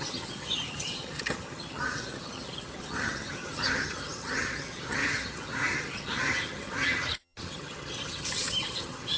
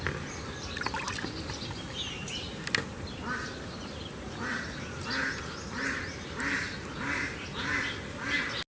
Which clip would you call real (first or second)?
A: second